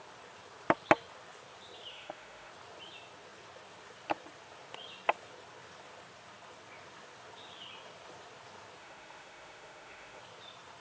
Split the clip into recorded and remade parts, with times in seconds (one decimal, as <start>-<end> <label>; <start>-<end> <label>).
0.0-1.9 recorded; 1.9-2.5 remade; 2.5-8.8 recorded; 8.8-10.2 remade; 10.2-10.8 recorded

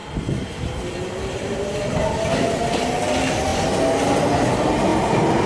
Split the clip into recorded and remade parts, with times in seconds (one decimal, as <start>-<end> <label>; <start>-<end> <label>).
0.0-5.5 recorded

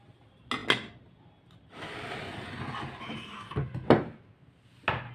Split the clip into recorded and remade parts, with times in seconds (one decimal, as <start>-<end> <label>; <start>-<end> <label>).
0.0-5.1 recorded

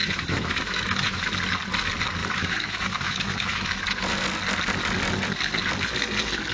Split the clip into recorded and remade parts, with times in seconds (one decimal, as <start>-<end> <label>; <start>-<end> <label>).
0.0-1.3 remade; 1.3-2.2 recorded; 2.2-3.8 remade; 3.8-6.5 recorded

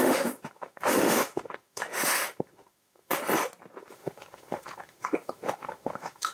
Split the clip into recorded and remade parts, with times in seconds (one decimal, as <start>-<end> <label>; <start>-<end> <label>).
0.0-3.2 remade; 3.2-3.8 recorded; 3.8-6.3 remade

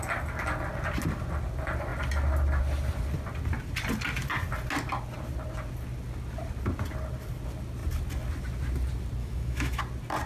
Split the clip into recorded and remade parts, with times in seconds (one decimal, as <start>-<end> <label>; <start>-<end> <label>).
0.0-9.2 recorded; 9.2-9.8 remade; 9.8-10.3 recorded

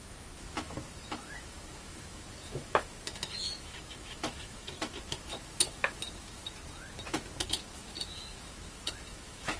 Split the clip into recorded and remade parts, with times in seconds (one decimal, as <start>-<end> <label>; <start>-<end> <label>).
0.0-6.4 remade; 6.4-7.1 recorded; 7.1-9.6 remade